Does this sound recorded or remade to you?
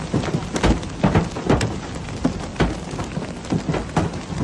recorded